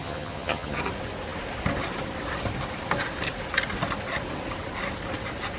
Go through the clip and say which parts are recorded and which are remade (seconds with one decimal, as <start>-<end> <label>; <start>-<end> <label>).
0.0-0.8 remade; 0.8-5.6 recorded